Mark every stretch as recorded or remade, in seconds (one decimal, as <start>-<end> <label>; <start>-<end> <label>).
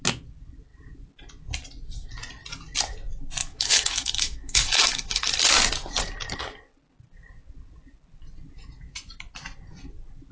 0.0-3.4 recorded; 3.4-5.3 remade; 5.3-10.3 recorded